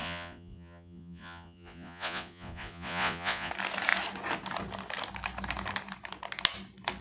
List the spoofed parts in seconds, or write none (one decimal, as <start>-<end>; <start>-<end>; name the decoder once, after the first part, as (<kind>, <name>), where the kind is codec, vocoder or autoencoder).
0.0-3.5 (vocoder, Vocos)